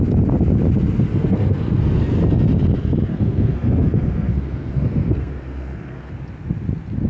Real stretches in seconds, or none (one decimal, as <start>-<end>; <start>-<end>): 0.0-1.1; 2.1-3.1; 6.1-7.1